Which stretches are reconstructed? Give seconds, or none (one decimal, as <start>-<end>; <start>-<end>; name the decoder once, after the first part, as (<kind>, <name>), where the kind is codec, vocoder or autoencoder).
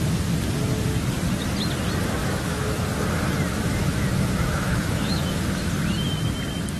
2.2-2.8 (autoencoder, DAC-VAE); 3.5-5.7